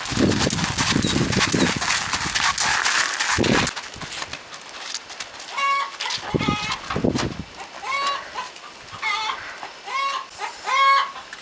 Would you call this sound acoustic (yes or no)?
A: yes